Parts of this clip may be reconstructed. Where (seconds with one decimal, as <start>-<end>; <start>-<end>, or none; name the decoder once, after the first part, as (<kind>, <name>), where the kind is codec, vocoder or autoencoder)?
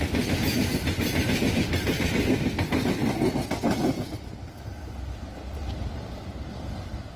5.6-6.4 (vocoder, BigVGAN v2)